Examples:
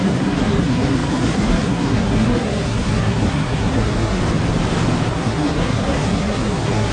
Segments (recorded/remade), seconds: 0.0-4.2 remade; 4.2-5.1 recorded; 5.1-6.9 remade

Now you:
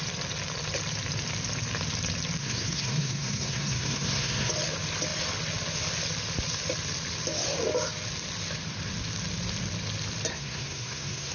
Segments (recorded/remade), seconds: 0.0-2.4 recorded; 2.4-4.5 remade; 4.5-10.3 recorded; 10.3-11.3 remade

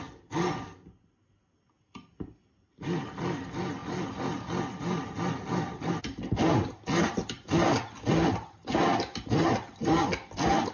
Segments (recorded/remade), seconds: 0.0-10.7 recorded